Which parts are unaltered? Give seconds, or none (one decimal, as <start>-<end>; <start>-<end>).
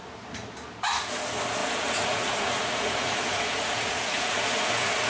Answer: 0.0-1.6